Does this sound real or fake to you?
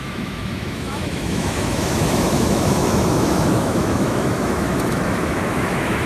fake